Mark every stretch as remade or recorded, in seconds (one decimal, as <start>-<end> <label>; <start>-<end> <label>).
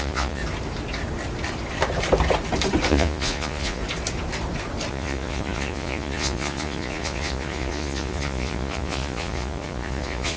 0.0-0.4 remade; 0.4-2.9 recorded; 2.9-3.8 remade; 3.8-4.9 recorded; 4.9-10.4 remade